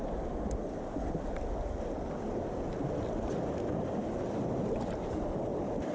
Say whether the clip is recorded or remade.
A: recorded